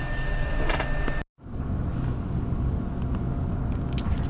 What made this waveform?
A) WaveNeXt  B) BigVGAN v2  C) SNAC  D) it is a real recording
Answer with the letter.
D